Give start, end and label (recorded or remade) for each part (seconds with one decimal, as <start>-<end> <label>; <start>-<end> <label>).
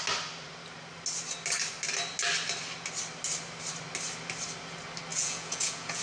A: 0.0-5.1 recorded; 5.1-6.0 remade